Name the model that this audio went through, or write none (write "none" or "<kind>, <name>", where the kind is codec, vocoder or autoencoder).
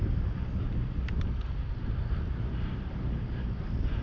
none